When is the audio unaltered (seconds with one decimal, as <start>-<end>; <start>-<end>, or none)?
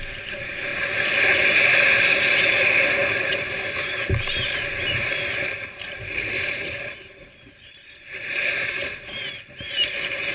0.7-2.4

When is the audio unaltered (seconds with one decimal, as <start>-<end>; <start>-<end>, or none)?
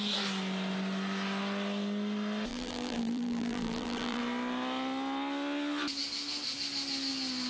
0.0-2.5; 4.2-7.5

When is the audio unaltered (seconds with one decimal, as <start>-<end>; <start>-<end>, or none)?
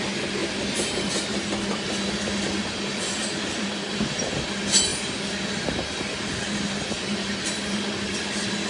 0.0-0.4; 4.1-8.7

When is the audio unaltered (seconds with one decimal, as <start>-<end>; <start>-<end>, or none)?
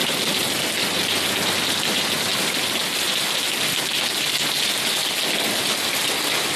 0.0-6.6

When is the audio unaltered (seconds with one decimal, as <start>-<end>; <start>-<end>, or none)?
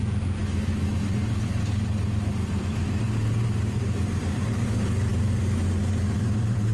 none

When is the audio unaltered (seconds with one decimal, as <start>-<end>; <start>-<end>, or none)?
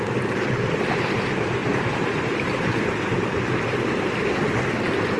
0.0-1.6; 3.4-5.2